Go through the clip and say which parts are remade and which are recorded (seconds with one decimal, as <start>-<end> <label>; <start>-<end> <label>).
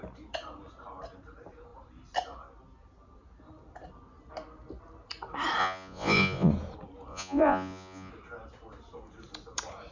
0.0-5.6 recorded; 5.6-6.5 remade; 6.5-7.1 recorded; 7.1-8.1 remade; 8.1-9.9 recorded